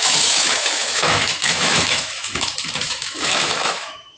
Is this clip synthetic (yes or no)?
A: yes